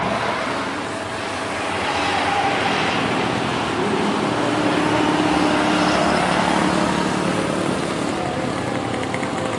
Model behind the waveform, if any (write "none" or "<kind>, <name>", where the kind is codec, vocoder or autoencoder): none